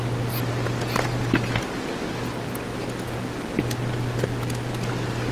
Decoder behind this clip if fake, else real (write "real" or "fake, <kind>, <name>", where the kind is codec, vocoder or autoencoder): real